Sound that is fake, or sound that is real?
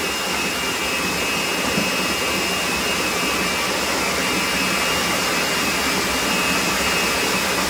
real